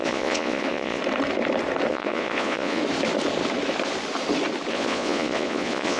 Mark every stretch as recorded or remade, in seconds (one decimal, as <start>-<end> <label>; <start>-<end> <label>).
0.0-1.0 remade; 1.0-1.9 recorded; 1.9-2.8 remade; 2.8-4.7 recorded; 4.7-6.0 remade